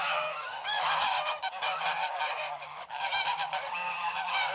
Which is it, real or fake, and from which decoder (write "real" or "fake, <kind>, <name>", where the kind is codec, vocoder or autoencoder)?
fake, codec, DAC